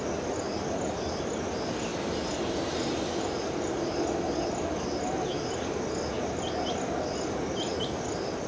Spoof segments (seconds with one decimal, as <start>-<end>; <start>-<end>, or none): none